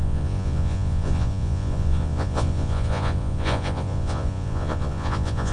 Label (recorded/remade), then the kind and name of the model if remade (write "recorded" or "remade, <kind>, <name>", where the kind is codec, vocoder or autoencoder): remade, vocoder, Vocos